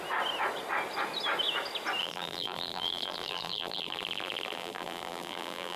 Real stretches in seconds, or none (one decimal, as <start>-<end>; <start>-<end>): 0.0-2.0